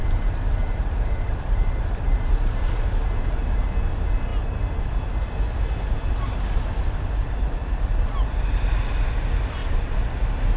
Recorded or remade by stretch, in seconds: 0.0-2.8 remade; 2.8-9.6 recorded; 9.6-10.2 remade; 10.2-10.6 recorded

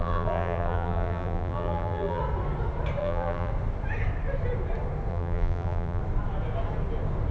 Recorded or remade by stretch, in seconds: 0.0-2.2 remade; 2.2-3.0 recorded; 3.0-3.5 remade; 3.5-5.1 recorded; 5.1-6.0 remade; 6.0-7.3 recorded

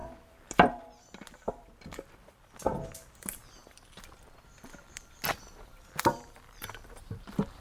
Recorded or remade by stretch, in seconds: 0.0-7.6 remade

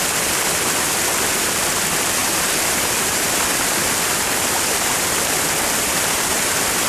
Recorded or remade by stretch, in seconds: 0.0-2.2 recorded; 2.2-6.3 remade; 6.3-6.9 recorded